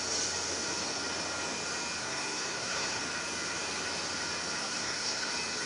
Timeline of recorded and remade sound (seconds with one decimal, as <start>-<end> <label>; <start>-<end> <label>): 0.0-2.0 recorded; 2.0-3.0 remade; 3.0-4.6 recorded; 4.6-5.3 remade; 5.3-5.7 recorded